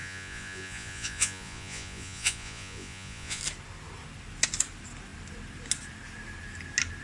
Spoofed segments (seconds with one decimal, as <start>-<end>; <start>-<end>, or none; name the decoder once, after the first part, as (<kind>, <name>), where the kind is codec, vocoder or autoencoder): 0.0-3.4 (vocoder, Vocos)